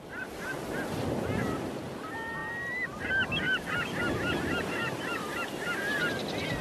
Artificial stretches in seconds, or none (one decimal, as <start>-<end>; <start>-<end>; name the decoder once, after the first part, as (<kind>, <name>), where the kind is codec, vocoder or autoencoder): none

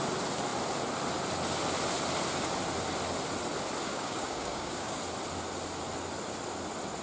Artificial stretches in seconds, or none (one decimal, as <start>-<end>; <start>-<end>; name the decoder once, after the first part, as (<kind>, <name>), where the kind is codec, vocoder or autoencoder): 3.9-5.0 (codec, DAC)

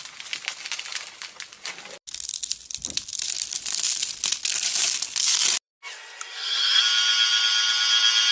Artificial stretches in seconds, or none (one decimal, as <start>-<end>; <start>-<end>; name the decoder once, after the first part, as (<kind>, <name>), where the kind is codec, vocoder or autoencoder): none

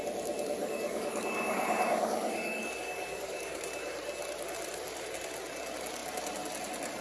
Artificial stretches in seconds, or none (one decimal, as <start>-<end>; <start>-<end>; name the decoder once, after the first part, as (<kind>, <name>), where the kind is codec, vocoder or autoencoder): 0.6-3.6 (codec, DAC)

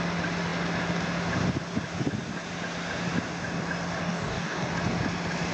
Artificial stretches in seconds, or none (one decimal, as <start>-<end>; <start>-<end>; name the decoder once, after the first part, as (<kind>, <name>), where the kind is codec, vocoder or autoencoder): 4.0-4.7 (codec, DAC)

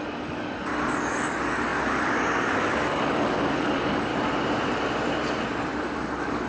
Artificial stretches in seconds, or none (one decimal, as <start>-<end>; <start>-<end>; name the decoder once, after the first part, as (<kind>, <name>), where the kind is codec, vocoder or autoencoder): 0.0-4.1 (codec, DAC); 5.8-6.5

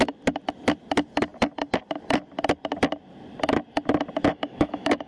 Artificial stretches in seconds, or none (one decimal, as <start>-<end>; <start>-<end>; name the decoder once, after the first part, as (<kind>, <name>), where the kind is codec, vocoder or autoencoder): 4.3-5.1 (codec, DAC)

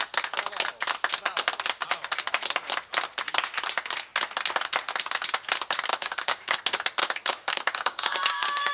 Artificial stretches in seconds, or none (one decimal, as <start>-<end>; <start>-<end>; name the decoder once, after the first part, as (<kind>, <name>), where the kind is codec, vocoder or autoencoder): 5.9-6.6 (codec, DAC); 7.0-8.7